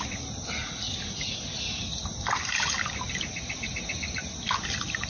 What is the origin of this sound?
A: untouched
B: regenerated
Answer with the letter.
A